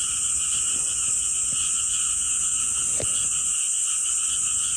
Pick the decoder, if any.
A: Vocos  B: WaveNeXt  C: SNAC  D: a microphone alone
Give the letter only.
D